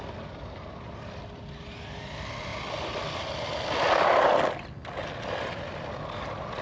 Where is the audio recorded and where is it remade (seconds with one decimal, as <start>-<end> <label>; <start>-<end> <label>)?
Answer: 0.0-6.6 recorded